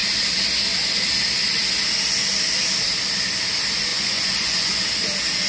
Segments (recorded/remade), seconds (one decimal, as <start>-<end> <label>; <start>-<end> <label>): 0.0-3.9 recorded; 3.9-4.7 remade; 4.7-5.5 recorded